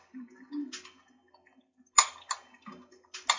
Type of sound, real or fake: real